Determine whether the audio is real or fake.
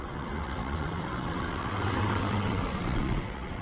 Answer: fake